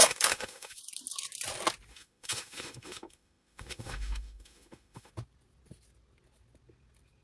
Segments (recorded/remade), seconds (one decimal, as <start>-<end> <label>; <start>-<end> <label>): 0.0-0.8 remade; 0.8-1.9 recorded; 1.9-5.1 remade; 5.1-7.2 recorded